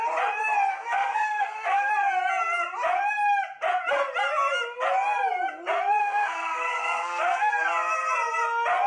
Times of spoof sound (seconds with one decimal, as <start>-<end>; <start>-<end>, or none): 0.7-1.9; 6.0-7.5